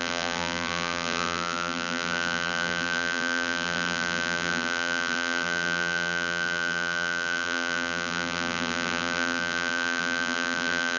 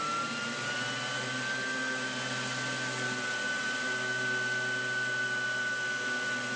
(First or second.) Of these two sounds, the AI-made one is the first